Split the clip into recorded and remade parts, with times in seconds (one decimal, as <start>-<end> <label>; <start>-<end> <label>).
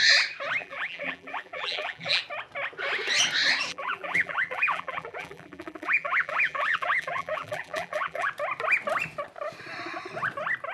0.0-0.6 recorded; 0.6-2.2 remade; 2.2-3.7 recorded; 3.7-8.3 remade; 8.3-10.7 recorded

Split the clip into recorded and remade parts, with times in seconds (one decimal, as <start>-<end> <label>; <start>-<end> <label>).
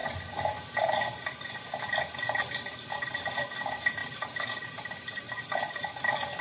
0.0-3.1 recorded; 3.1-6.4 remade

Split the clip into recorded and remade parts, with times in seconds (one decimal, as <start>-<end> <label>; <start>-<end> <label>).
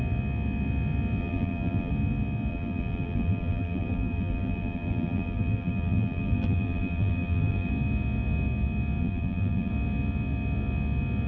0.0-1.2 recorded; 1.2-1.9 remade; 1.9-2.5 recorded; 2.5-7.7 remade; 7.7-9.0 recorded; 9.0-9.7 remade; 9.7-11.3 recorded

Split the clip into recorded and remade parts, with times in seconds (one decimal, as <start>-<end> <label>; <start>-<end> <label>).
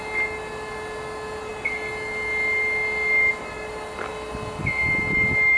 0.0-5.6 recorded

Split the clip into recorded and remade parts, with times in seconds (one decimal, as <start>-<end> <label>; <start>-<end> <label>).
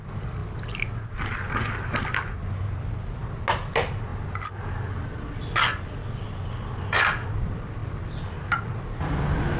0.0-9.6 recorded